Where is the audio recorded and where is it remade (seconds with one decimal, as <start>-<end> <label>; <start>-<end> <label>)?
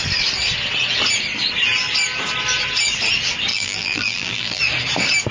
0.0-3.5 recorded; 3.5-4.6 remade; 4.6-5.3 recorded